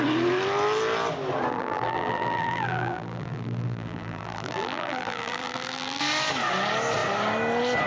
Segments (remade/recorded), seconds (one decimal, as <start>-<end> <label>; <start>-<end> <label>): 0.0-1.5 recorded; 1.5-6.0 remade; 6.0-7.9 recorded